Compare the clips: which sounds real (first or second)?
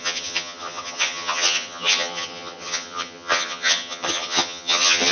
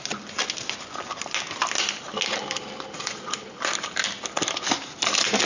second